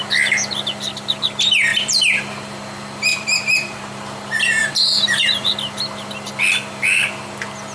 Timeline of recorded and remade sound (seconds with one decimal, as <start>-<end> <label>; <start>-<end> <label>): 0.0-1.7 recorded; 1.7-2.2 remade; 2.2-3.1 recorded; 3.1-3.8 remade; 3.8-4.6 recorded; 4.6-5.5 remade; 5.5-7.7 recorded